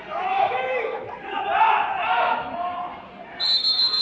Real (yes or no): yes